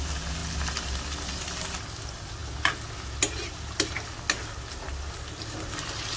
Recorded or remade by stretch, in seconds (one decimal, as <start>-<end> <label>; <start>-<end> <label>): 0.0-6.2 recorded